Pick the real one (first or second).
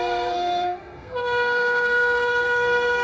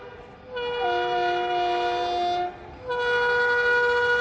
second